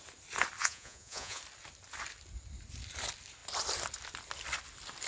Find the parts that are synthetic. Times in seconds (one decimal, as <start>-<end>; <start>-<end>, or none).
0.6-1.4